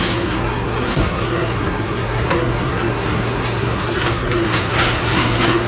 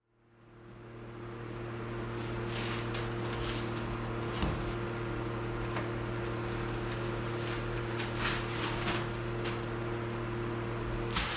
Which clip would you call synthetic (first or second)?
first